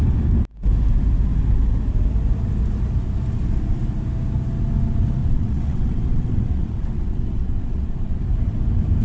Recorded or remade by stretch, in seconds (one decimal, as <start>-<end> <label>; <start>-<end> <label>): 0.0-5.2 recorded; 5.2-8.2 remade; 8.2-9.0 recorded